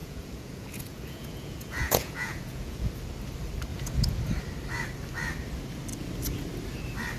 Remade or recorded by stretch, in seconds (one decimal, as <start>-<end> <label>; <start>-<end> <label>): 0.0-2.9 remade; 2.9-3.7 recorded; 3.7-4.2 remade; 4.2-7.2 recorded